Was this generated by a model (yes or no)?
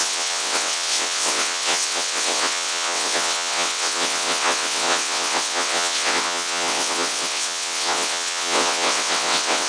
yes